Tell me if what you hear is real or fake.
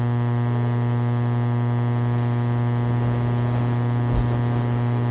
real